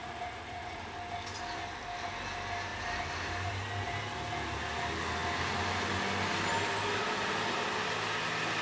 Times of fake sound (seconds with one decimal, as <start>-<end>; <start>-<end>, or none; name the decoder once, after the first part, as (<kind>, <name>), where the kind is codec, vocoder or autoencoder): 0.0-0.8 (vocoder, Vocos)